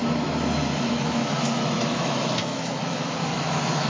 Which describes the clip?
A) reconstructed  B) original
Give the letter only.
A